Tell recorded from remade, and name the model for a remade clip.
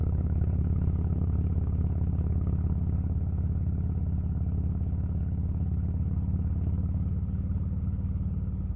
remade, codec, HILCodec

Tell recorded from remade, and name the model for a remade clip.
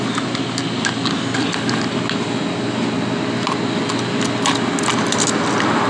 recorded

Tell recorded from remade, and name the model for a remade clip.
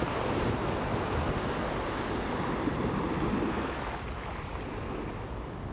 recorded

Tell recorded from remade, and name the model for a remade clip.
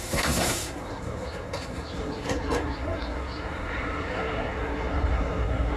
remade, codec, SNAC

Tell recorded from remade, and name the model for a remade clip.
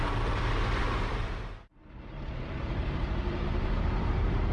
remade, vocoder, BigVGAN v2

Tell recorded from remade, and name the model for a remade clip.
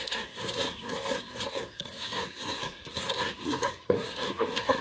remade, codec, SNAC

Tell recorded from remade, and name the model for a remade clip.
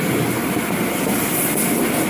recorded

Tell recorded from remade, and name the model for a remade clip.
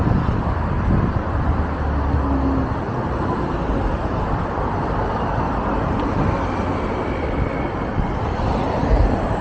recorded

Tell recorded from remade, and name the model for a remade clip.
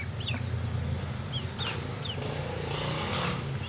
recorded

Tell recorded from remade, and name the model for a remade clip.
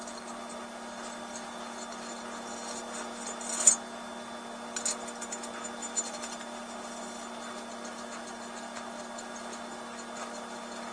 recorded